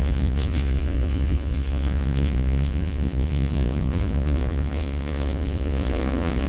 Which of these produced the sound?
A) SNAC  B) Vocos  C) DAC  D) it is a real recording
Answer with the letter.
B